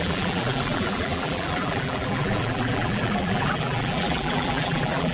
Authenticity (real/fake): fake